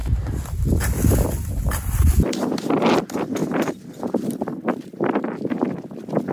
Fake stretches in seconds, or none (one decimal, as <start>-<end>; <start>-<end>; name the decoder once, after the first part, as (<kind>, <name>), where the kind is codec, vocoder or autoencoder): none